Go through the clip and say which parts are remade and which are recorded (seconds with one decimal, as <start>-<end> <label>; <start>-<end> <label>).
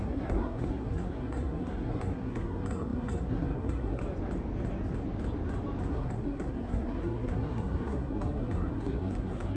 0.0-4.0 remade; 4.0-5.9 recorded; 5.9-9.6 remade